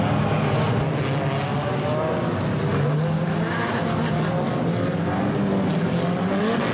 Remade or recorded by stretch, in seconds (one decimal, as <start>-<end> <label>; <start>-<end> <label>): 0.0-6.7 recorded